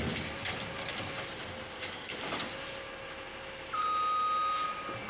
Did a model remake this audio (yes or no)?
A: no